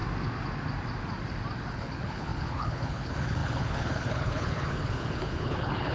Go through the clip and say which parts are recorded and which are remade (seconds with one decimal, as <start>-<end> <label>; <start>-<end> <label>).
0.0-1.7 recorded; 1.7-5.9 remade